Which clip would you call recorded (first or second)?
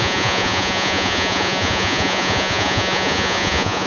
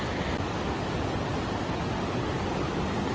second